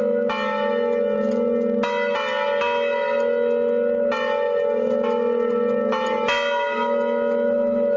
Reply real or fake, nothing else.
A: real